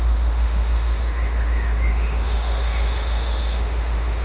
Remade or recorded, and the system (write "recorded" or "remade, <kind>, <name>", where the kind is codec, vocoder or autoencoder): remade, autoencoder, DAC-VAE